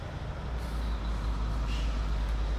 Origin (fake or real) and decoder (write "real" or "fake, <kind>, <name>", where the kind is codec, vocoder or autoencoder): real